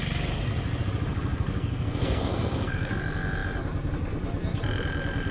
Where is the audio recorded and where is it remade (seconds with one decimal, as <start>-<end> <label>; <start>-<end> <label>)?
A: 0.0-1.1 recorded; 1.1-2.9 remade; 2.9-5.3 recorded